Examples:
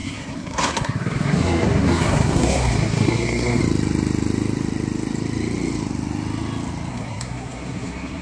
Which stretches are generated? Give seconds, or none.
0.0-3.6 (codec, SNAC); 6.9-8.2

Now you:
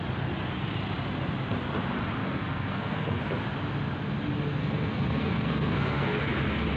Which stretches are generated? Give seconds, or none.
2.2-3.2 (codec, SNAC); 4.6-6.2

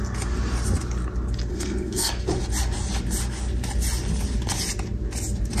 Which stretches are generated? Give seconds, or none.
1.5-2.1 (codec, SNAC)

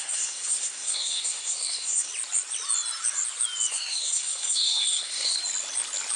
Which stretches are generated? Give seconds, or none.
0.0-2.1 (codec, SNAC); 3.7-5.4

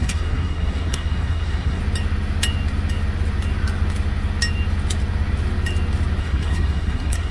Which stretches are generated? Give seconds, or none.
0.0-1.8 (codec, SNAC); 6.2-7.3

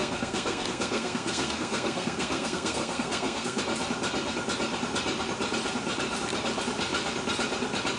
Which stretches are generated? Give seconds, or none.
0.0-3.6 (codec, SNAC)

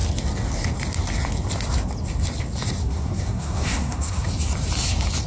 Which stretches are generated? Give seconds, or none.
2.8-4.3 (codec, SNAC)